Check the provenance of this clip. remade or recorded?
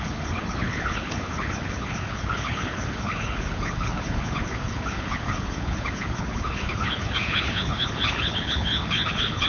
remade